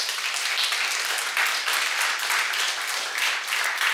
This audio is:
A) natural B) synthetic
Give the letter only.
A